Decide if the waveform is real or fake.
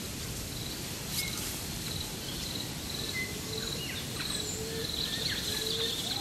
real